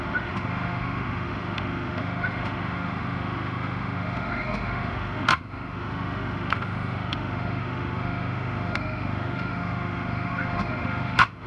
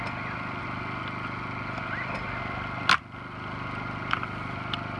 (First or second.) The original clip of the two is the second